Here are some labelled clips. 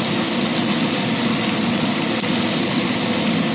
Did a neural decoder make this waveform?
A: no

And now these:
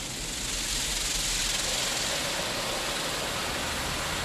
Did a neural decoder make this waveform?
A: no